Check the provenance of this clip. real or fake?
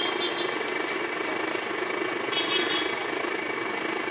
real